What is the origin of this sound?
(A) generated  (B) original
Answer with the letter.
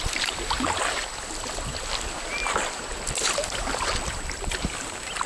B